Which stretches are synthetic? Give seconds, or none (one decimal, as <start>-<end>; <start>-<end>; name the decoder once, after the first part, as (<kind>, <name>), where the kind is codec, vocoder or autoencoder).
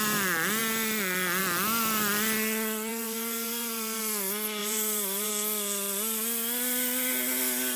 2.9-4.0 (vocoder, BigVGAN v2); 4.6-5.3